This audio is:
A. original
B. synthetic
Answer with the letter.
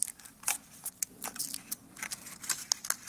A